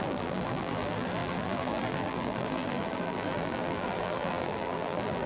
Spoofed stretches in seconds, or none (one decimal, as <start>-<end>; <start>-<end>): 0.0-5.3